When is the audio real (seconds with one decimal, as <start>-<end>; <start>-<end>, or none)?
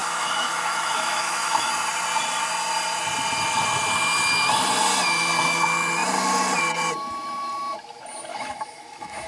1.7-8.3